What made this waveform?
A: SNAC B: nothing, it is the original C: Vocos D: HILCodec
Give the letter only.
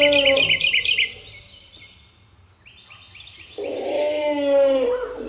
B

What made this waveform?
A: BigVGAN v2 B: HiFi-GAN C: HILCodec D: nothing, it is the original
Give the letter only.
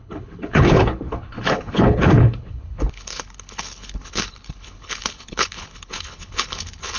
C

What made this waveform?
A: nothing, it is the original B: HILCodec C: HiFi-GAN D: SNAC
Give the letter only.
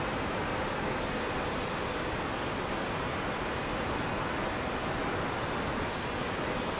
A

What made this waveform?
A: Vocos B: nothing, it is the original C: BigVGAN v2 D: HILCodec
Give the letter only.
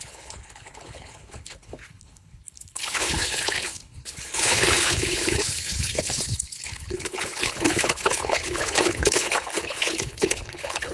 D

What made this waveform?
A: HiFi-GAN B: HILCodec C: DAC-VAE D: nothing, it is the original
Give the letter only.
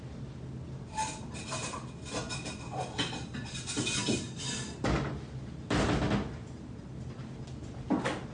D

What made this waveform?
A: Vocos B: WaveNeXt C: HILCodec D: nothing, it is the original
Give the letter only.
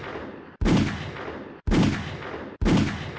D